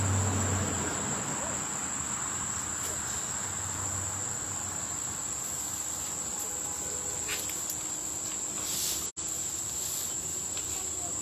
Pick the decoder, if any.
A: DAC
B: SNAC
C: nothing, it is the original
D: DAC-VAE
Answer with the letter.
C